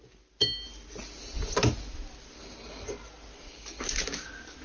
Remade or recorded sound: recorded